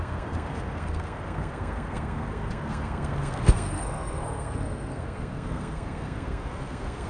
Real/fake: fake